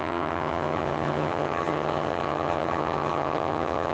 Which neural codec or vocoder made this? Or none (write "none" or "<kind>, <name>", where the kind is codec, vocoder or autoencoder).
vocoder, HiFi-GAN